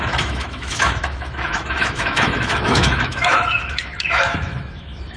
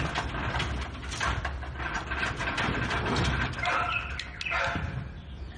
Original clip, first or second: second